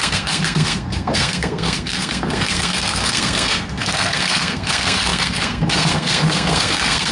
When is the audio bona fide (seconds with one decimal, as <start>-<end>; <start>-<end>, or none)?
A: none